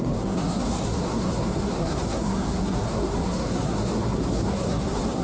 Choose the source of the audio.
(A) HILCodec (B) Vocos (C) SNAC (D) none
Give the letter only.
C